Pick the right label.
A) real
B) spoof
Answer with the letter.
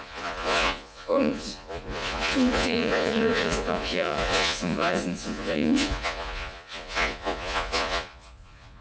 B